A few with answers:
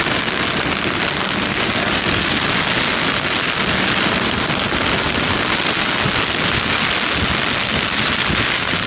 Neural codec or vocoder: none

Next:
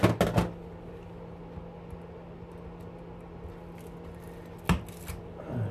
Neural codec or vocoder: none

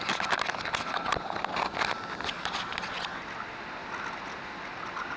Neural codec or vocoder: none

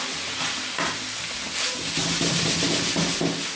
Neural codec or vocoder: none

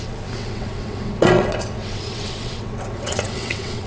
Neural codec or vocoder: vocoder, WaveNeXt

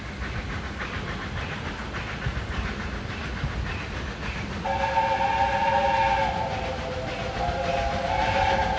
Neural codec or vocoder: none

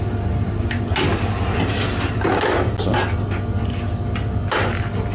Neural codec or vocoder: none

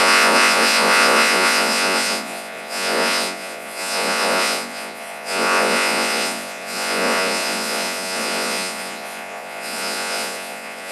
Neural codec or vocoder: vocoder, Vocos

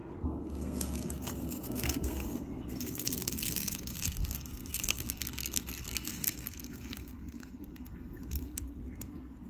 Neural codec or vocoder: codec, SNAC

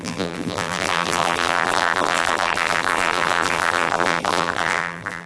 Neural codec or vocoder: vocoder, BigVGAN v2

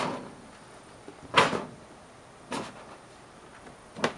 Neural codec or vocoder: none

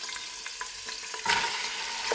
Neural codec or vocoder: none